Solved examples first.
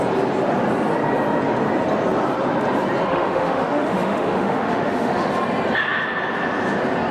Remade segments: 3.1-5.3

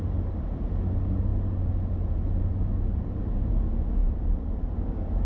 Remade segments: none

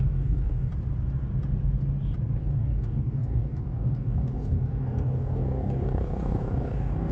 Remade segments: 0.0-0.7; 2.4-7.1